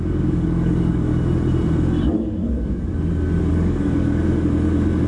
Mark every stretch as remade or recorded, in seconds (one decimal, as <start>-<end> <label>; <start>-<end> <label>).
0.0-1.1 remade; 1.1-2.0 recorded; 2.0-2.9 remade; 2.9-3.5 recorded; 3.5-4.0 remade; 4.0-5.1 recorded